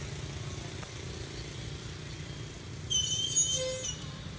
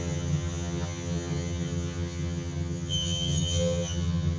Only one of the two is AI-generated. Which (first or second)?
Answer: second